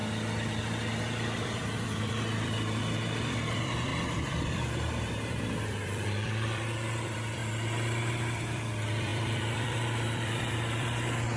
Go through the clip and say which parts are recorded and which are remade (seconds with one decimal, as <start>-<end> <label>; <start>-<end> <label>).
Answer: 0.0-11.4 remade